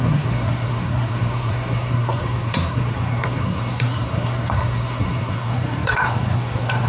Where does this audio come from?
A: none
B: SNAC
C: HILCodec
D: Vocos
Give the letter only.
B